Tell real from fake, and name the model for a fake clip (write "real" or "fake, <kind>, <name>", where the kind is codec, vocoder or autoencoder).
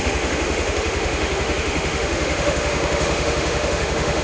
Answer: fake, autoencoder, DAC-VAE